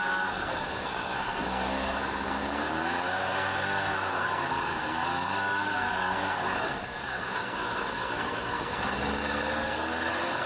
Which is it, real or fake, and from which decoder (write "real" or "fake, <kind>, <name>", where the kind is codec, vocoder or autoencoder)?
fake, codec, SNAC